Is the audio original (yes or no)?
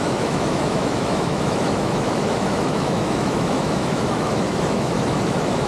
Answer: no